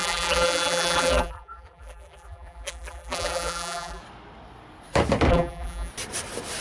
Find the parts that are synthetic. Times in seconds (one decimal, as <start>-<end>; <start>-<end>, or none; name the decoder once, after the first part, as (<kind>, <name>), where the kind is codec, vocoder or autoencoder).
0.0-4.0 (vocoder, BigVGAN v2); 5.3-5.9